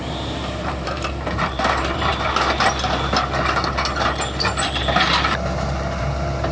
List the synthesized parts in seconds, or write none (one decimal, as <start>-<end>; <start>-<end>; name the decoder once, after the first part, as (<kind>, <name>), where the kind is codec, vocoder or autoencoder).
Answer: 0.0-2.1 (vocoder, BigVGAN v2); 6.0-6.5